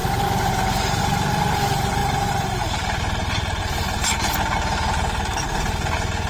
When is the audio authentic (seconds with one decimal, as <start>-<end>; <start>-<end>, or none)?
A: 0.0-2.0; 3.6-6.3